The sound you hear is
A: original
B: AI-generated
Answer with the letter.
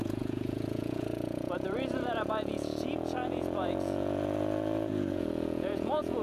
B